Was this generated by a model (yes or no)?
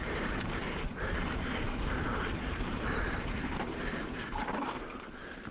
yes